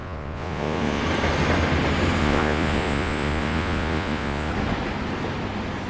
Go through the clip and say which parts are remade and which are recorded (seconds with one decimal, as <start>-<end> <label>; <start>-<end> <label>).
0.0-1.0 remade; 1.0-2.2 recorded; 2.2-4.5 remade; 4.5-5.9 recorded